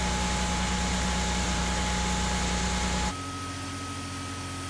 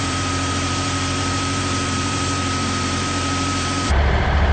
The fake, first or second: second